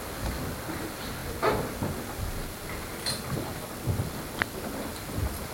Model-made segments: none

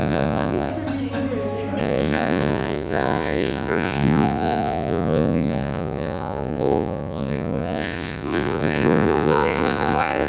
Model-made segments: 0.0-0.7 (vocoder, Vocos); 1.8-10.3

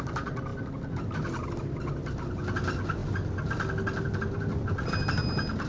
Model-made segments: none

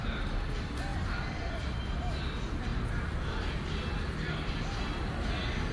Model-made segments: none

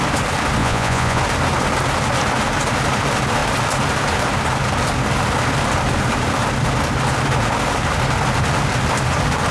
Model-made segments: 0.6-1.2 (vocoder, Vocos)

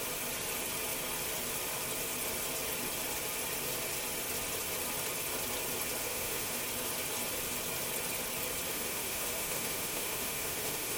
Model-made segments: 6.0-6.6 (autoencoder, DAC-VAE); 8.7-11.0

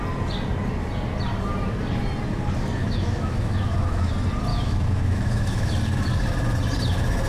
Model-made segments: 2.8-4.1 (autoencoder, DAC-VAE); 4.5-5.7

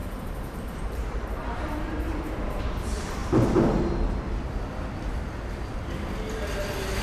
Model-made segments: 0.0-2.6 (vocoder, BigVGAN v2)